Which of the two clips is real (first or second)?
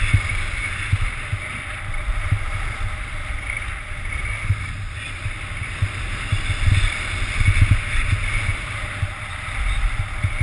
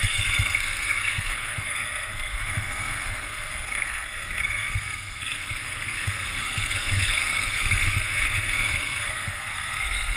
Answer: first